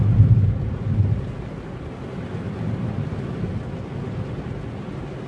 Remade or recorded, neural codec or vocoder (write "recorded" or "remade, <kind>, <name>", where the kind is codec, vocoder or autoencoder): recorded